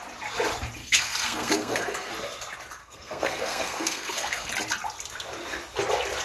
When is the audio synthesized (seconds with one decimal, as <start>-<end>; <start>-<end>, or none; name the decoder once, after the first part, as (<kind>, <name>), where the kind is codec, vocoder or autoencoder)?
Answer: 0.8-2.1 (codec, SNAC); 2.8-4.5